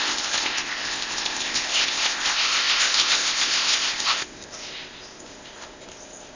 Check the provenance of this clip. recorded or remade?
remade